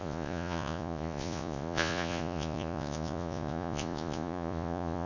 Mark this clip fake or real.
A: fake